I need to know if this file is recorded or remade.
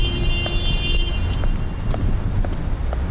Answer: recorded